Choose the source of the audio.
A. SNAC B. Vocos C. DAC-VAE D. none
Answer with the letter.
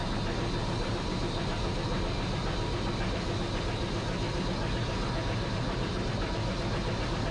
D